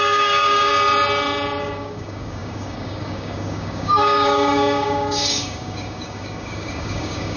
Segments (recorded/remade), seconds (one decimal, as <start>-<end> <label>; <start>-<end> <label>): 0.0-0.7 remade; 0.7-1.6 recorded; 1.6-7.4 remade